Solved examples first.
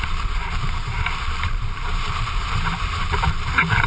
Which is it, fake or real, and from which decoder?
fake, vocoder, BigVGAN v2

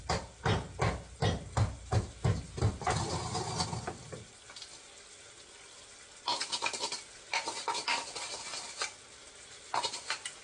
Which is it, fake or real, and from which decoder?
real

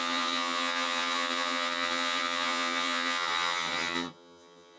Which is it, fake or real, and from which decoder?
fake, vocoder, HiFi-GAN